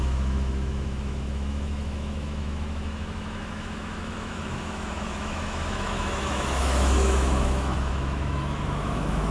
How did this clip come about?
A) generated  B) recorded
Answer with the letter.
A